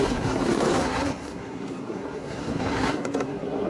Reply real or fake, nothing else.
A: fake